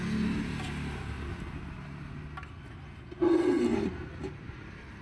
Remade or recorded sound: recorded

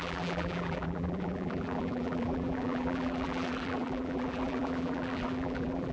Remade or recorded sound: remade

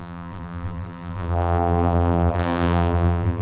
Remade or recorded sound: remade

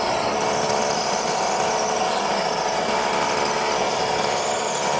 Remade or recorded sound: recorded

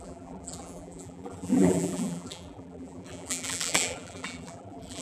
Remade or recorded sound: remade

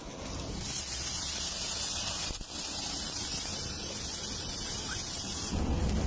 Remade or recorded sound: recorded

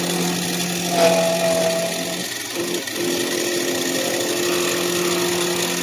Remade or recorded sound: recorded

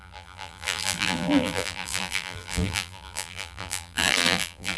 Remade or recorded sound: remade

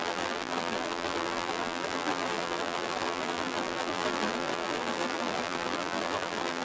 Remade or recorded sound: remade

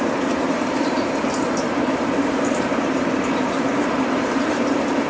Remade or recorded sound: remade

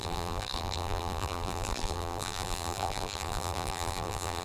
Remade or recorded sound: remade